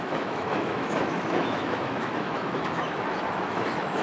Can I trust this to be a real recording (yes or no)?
no